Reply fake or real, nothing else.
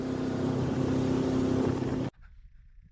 real